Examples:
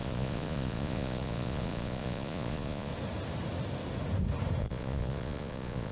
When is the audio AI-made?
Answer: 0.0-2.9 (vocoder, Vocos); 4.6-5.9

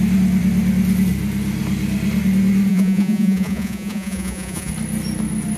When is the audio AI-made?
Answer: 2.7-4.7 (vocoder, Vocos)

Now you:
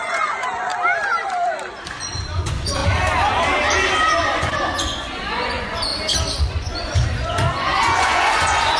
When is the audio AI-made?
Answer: 0.0-0.7 (vocoder, Vocos); 1.9-2.8; 4.2-5.9; 6.4-8.8

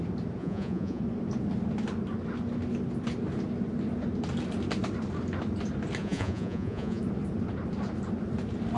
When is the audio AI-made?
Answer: 0.4-1.0 (vocoder, Vocos); 6.0-7.0